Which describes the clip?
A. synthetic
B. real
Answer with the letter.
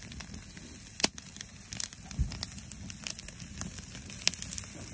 B